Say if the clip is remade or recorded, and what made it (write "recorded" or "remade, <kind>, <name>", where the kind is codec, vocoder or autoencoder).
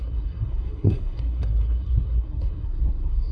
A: remade, codec, SNAC